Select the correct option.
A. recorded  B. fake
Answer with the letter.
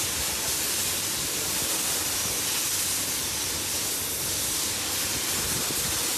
A